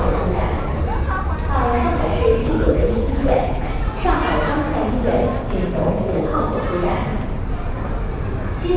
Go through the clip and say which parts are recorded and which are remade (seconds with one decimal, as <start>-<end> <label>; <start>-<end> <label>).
0.0-2.4 recorded; 2.4-3.7 remade; 3.7-5.7 recorded; 5.7-6.4 remade; 6.4-8.8 recorded